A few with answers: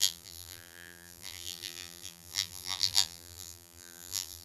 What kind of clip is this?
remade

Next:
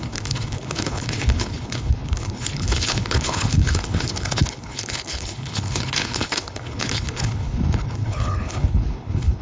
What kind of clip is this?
remade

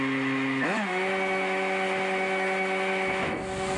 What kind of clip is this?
remade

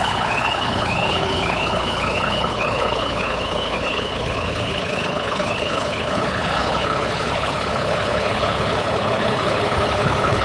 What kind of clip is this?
remade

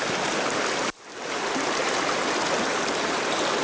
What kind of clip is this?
recorded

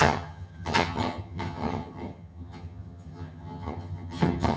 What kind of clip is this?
remade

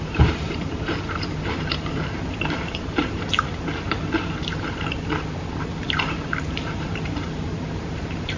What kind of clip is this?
remade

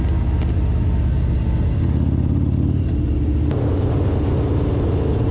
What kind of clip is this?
recorded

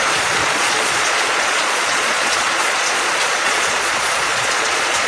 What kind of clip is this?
remade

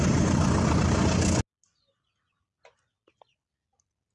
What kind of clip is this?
recorded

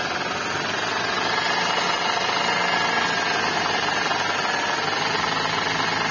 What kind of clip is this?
recorded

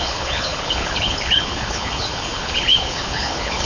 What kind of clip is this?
remade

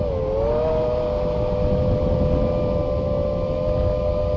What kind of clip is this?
recorded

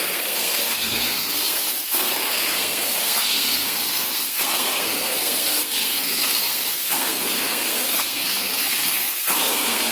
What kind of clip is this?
remade